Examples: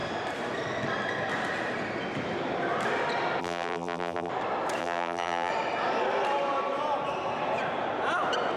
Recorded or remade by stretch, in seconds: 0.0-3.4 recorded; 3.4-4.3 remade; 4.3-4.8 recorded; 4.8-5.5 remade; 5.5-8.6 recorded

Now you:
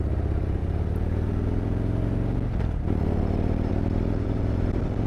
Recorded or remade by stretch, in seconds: 0.0-5.1 recorded

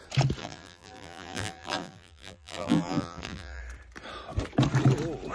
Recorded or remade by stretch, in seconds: 0.0-0.4 recorded; 0.4-3.6 remade; 3.6-5.3 recorded

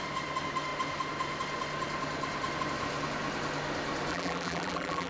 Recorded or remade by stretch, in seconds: 0.0-4.1 recorded; 4.1-5.1 remade